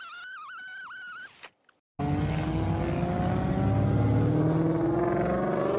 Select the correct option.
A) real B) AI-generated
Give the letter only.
A